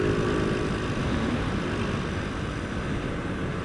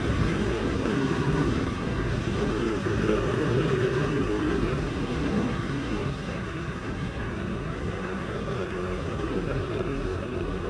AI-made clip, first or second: second